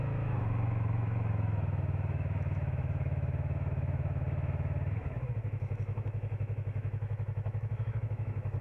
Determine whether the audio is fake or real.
fake